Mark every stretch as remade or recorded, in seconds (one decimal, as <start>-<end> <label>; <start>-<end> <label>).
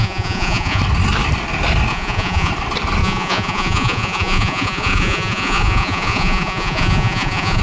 0.0-0.8 remade; 0.8-1.9 recorded; 1.9-2.5 remade; 2.5-3.0 recorded; 3.0-7.6 remade